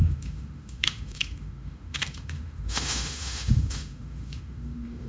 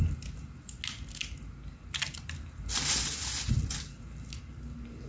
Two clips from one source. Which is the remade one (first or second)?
first